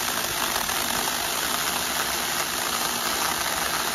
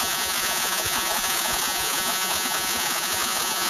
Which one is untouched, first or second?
first